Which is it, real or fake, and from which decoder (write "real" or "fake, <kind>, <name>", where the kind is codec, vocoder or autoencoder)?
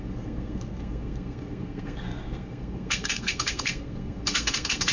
fake, codec, SNAC